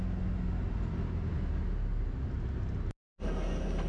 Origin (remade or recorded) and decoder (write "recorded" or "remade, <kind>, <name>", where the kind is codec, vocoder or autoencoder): recorded